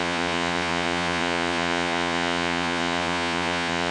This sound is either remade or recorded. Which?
remade